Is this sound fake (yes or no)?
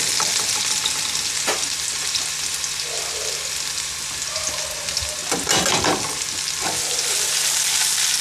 no